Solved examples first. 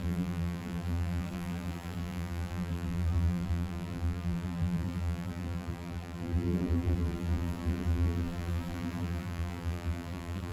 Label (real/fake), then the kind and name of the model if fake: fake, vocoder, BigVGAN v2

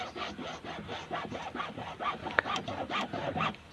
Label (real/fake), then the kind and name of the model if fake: real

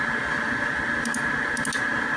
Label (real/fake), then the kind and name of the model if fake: real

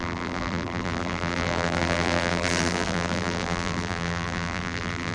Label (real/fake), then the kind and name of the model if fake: fake, vocoder, BigVGAN v2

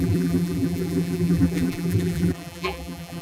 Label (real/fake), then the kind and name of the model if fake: fake, vocoder, BigVGAN v2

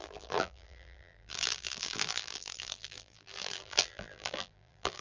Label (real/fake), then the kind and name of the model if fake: fake, vocoder, BigVGAN v2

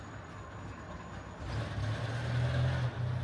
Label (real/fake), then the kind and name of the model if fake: real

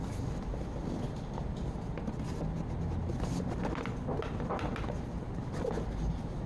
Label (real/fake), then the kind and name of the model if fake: real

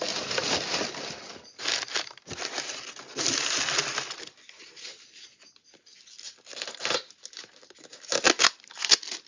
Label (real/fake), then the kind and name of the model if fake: real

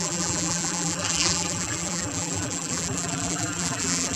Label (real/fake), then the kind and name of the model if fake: fake, vocoder, BigVGAN v2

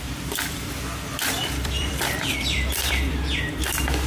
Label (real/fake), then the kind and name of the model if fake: fake, vocoder, BigVGAN v2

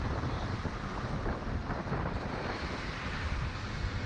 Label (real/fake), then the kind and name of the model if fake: fake, vocoder, BigVGAN v2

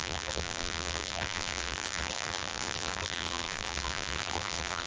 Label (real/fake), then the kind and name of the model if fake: fake, vocoder, BigVGAN v2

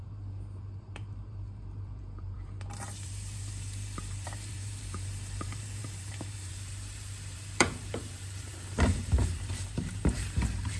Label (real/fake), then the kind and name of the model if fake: fake, vocoder, BigVGAN v2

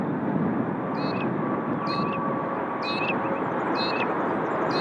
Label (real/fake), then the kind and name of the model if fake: real